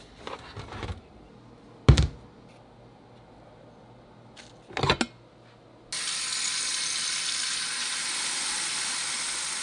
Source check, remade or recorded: recorded